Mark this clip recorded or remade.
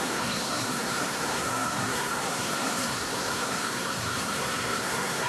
remade